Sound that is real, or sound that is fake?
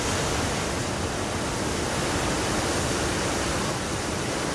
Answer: real